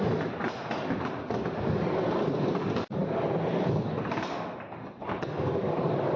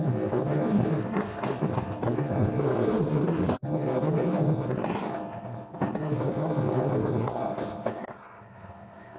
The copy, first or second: second